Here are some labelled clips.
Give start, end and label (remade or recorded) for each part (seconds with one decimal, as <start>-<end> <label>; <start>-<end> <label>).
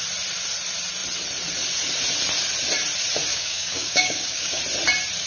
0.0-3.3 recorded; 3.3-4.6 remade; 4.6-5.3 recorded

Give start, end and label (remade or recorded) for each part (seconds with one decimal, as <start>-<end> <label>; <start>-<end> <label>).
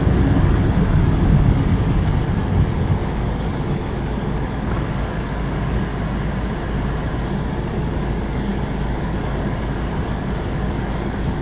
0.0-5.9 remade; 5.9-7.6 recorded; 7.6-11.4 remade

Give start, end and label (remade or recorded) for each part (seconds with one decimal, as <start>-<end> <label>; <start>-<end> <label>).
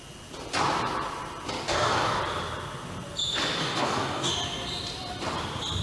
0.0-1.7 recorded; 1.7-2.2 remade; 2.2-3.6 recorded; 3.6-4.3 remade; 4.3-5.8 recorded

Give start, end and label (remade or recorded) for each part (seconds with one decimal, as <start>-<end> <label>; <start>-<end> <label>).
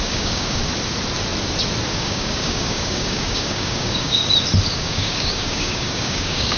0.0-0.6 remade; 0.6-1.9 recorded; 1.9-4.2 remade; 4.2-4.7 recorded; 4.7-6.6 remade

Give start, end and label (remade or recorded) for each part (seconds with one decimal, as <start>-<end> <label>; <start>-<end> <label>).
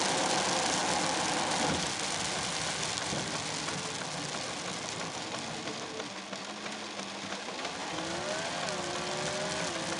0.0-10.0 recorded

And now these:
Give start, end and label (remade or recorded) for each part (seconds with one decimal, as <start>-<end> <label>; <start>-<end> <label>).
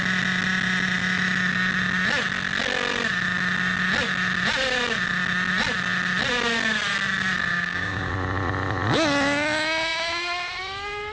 0.0-7.5 recorded; 7.5-8.1 remade; 8.1-11.1 recorded